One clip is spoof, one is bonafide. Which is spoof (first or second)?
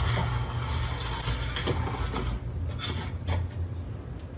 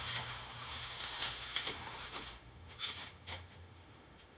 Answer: second